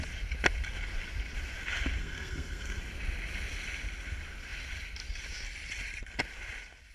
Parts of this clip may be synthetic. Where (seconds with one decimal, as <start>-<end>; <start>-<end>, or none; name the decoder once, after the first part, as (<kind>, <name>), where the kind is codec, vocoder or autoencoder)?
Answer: 2.0-2.8 (codec, SNAC)